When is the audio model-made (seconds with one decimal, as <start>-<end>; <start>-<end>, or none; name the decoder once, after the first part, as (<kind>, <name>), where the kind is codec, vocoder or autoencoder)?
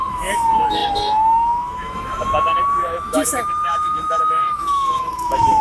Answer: 0.0-5.6 (autoencoder, DAC-VAE)